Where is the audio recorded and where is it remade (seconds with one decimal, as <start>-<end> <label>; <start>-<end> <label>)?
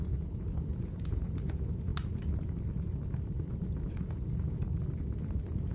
0.0-1.9 remade; 1.9-3.9 recorded; 3.9-4.6 remade; 4.6-5.7 recorded